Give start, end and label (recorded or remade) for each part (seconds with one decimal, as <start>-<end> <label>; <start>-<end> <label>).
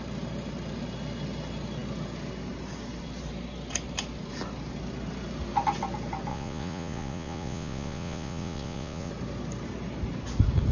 0.0-6.3 recorded; 6.3-9.1 remade; 9.1-10.7 recorded